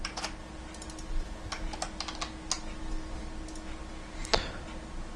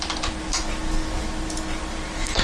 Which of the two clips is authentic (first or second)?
first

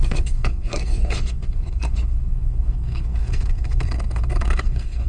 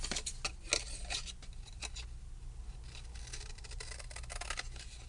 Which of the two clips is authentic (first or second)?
second